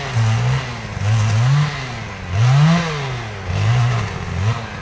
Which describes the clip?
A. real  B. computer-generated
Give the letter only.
A